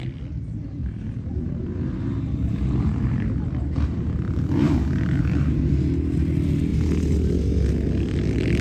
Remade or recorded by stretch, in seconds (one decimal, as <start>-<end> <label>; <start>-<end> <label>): 0.0-0.8 recorded; 0.8-5.7 remade; 5.7-8.6 recorded